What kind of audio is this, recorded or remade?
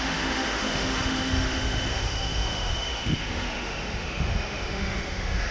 remade